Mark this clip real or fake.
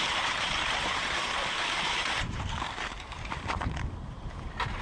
fake